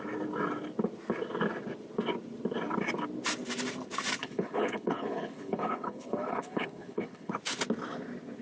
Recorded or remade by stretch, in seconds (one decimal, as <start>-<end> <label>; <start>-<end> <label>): 0.0-4.2 recorded; 4.2-7.3 remade; 7.3-8.4 recorded